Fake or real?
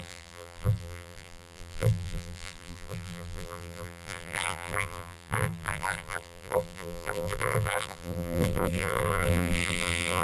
fake